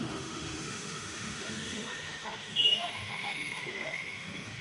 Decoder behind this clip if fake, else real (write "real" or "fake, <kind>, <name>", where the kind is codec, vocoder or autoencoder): fake, autoencoder, DAC-VAE